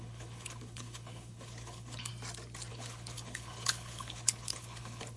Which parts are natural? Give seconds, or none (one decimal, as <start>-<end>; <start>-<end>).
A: 2.1-2.7